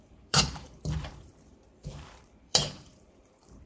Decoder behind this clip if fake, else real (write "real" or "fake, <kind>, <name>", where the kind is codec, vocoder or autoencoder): fake, vocoder, BigVGAN v2